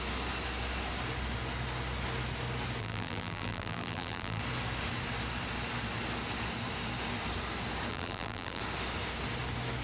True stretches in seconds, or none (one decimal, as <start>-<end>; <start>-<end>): 0.0-2.8; 4.4-7.9; 8.6-9.8